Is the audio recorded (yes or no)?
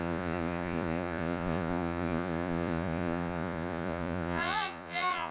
no